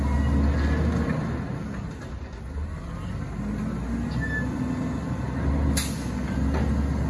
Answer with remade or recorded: recorded